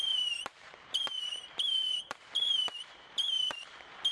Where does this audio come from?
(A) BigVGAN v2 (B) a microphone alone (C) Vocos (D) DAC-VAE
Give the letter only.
A